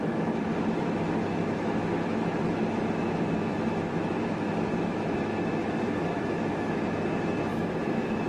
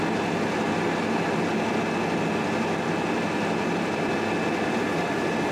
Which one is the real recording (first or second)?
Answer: second